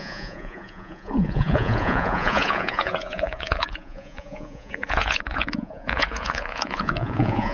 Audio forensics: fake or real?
fake